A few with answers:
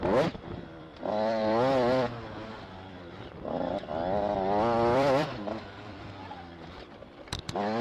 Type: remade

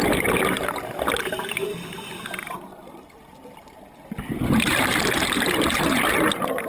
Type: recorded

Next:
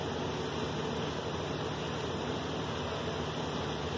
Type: recorded